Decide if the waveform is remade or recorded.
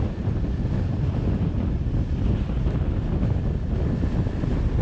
recorded